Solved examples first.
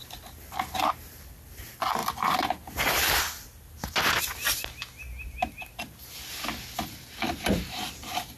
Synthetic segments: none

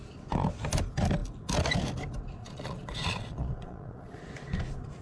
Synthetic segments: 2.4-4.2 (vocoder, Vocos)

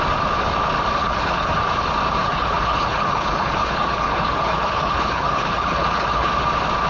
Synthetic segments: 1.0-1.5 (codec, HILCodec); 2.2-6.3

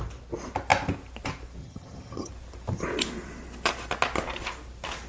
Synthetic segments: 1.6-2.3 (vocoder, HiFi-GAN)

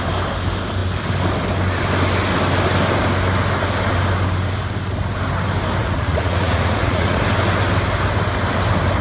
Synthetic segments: 5.8-7.2 (vocoder, Vocos)

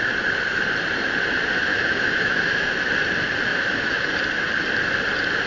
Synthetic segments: 1.7-2.7 (autoencoder, DAC-VAE); 3.5-4.1

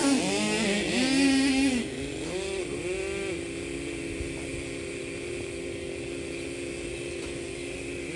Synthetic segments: none